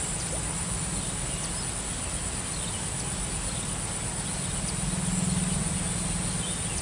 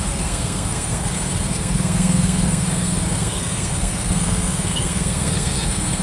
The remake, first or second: second